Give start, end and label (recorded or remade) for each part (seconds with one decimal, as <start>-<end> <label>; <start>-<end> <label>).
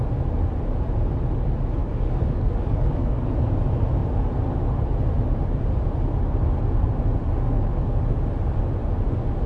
0.0-1.8 recorded; 1.8-3.3 remade; 3.3-7.2 recorded; 7.2-8.0 remade; 8.0-9.5 recorded